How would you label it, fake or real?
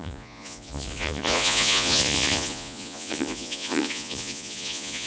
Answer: fake